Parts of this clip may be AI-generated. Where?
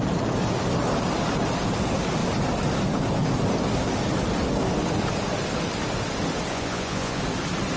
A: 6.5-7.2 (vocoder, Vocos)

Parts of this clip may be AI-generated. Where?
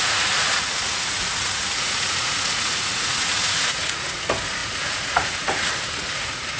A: 0.0-6.6 (vocoder, Vocos)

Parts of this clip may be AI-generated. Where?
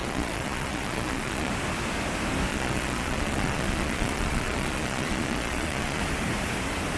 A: 0.0-1.5 (vocoder, Vocos); 2.5-6.0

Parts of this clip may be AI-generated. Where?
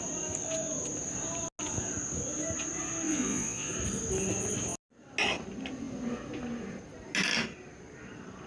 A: 3.1-3.7 (vocoder, Vocos)